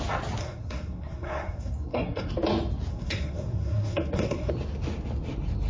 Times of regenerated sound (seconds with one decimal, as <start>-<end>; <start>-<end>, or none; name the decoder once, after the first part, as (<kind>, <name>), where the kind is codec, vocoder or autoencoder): 0.4-2.3 (codec, SNAC); 2.9-4.5